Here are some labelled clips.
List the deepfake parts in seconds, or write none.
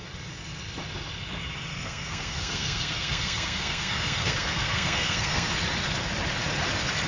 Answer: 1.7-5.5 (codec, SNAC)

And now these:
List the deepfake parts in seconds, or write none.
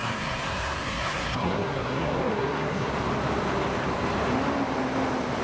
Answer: 0.0-2.9 (codec, SNAC)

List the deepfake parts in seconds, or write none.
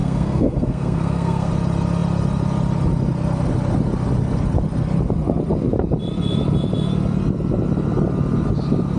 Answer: 0.0-1.5 (codec, SNAC)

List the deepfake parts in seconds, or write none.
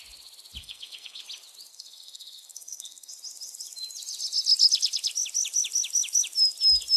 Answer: 0.6-1.2 (codec, SNAC); 1.7-3.1